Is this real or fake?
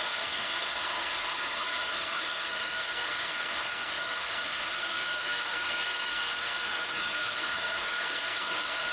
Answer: fake